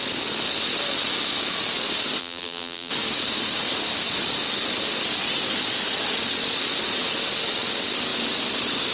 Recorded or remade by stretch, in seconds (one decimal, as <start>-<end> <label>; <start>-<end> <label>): 0.0-2.2 recorded; 2.2-2.9 remade; 2.9-8.9 recorded